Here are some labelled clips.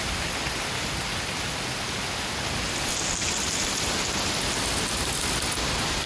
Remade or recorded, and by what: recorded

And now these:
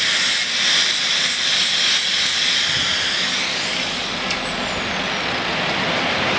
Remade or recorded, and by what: recorded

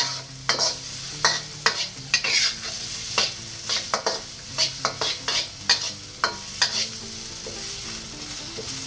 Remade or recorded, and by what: recorded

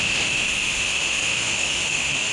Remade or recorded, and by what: remade, autoencoder, DAC-VAE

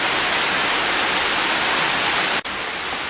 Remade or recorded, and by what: recorded